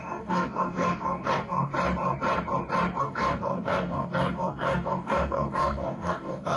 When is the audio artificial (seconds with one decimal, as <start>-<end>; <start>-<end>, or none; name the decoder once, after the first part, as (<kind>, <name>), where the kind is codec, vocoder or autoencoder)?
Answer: 0.0-1.7 (codec, DAC); 3.0-6.6